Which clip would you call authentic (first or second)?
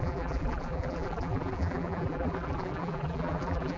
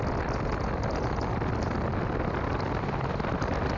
second